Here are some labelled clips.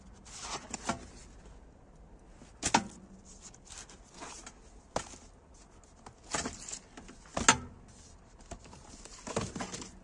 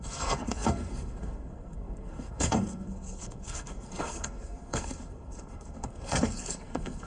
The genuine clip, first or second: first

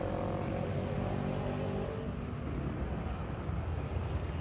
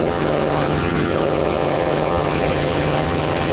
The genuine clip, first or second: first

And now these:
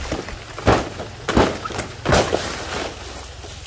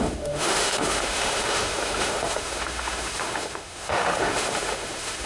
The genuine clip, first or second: first